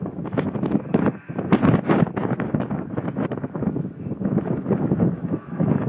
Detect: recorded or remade remade